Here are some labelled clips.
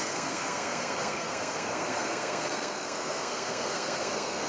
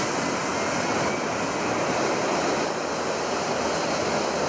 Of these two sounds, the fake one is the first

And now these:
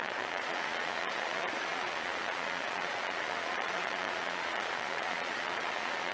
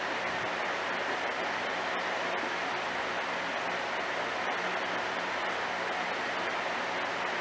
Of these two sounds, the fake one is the first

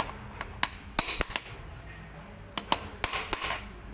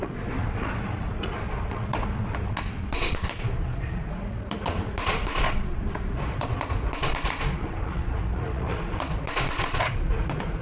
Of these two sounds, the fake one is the second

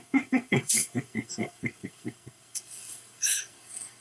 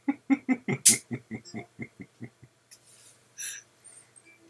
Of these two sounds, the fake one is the first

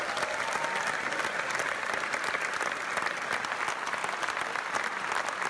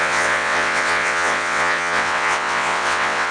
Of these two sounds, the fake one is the second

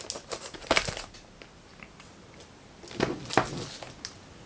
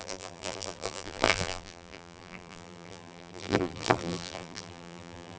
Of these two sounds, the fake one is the second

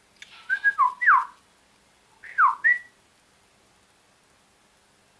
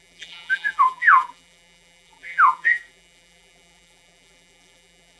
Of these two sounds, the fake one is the second